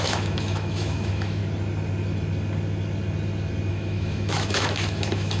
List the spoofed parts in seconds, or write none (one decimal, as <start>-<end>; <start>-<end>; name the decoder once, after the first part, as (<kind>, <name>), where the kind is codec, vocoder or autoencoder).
0.0-1.4 (autoencoder, DAC-VAE); 3.7-5.4

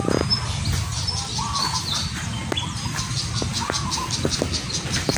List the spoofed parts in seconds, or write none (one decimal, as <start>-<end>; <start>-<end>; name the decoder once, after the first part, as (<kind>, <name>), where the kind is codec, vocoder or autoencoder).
none

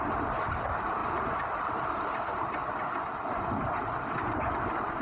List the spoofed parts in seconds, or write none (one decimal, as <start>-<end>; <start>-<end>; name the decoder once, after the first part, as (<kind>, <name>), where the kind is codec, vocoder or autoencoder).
none

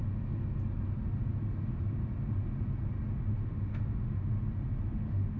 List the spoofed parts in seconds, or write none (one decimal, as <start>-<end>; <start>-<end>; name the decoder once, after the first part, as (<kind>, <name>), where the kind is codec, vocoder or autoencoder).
3.1-4.3 (autoencoder, DAC-VAE); 4.9-5.4

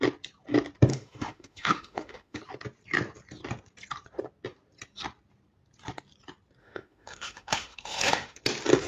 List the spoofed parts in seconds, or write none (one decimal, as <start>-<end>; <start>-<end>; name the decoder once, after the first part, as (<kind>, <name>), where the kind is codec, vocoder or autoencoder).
0.9-2.4 (autoencoder, DAC-VAE); 6.6-8.4

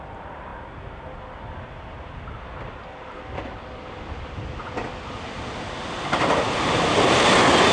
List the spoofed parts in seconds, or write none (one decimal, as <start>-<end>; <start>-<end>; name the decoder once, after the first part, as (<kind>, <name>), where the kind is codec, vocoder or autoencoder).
none

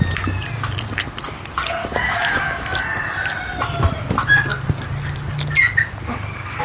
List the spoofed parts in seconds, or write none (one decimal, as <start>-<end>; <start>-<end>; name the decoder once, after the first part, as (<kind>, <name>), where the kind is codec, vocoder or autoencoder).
1.8-2.8 (autoencoder, DAC-VAE)

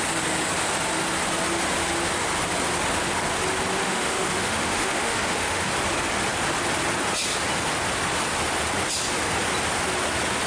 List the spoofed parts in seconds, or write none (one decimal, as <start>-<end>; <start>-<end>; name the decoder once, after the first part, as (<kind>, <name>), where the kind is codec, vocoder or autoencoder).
3.8-5.7 (autoencoder, DAC-VAE)